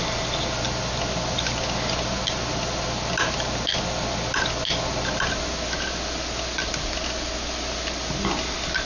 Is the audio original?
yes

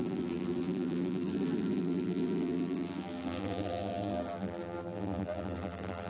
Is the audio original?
no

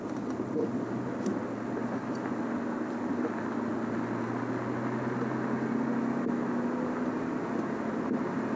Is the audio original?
yes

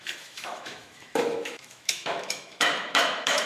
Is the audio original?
no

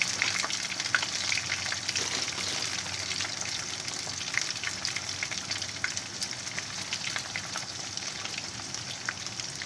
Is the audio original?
yes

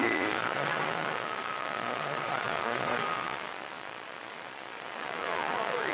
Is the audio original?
no